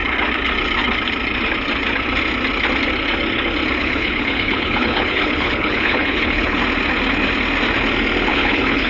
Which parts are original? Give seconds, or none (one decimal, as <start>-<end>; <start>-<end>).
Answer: 0.0-3.8; 6.6-8.3